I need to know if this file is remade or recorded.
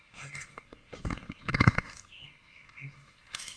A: remade